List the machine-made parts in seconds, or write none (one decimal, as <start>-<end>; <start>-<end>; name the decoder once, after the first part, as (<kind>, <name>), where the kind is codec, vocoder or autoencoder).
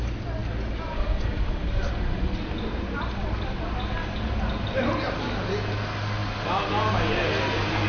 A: none